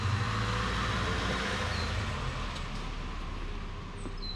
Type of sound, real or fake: real